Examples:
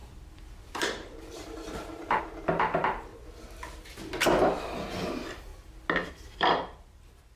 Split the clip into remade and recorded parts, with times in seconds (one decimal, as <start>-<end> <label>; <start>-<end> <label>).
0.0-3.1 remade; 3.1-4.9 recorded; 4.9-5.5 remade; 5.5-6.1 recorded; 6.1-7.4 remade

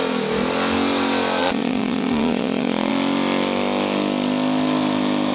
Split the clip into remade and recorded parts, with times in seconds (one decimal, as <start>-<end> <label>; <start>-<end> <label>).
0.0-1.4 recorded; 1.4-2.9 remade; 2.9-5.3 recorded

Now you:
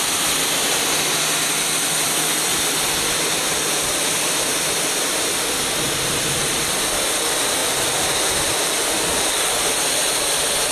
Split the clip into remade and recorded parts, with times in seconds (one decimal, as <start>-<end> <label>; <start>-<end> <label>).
0.0-10.7 recorded

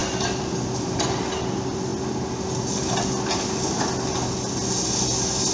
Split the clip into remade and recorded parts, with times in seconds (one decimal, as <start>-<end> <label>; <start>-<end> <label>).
0.0-5.5 recorded

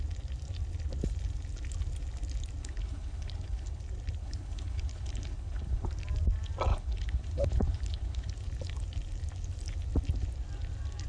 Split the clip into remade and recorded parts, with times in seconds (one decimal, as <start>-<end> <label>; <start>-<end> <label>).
0.0-2.6 recorded; 2.6-3.8 remade; 3.8-4.2 recorded; 4.2-5.9 remade; 5.9-6.7 recorded; 6.7-8.3 remade; 8.3-11.1 recorded

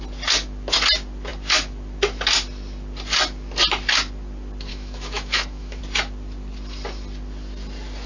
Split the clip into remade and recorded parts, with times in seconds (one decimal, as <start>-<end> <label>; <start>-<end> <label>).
0.0-4.7 recorded; 4.7-5.8 remade; 5.8-8.1 recorded